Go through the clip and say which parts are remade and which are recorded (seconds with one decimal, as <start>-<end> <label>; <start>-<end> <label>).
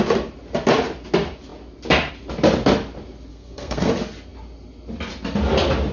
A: 0.0-3.3 recorded; 3.3-3.9 remade; 3.9-5.9 recorded